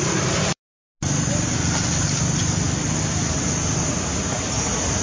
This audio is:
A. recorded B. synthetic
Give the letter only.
A